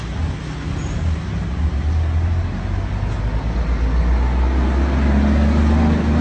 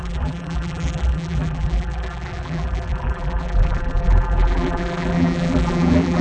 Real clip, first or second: first